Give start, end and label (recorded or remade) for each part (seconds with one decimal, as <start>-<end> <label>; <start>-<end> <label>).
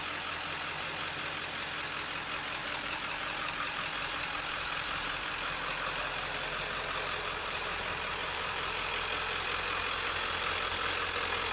0.0-2.6 recorded; 2.6-5.3 remade; 5.3-7.4 recorded; 7.4-8.9 remade; 8.9-11.5 recorded